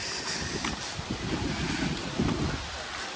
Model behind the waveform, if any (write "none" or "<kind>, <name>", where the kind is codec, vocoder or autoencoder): none